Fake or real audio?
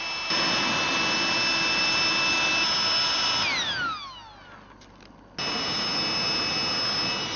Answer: real